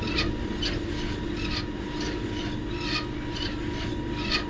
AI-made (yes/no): no